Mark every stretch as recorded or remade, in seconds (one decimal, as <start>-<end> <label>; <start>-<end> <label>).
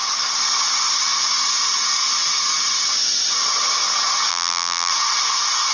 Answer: 0.0-4.3 recorded; 4.3-4.9 remade; 4.9-5.7 recorded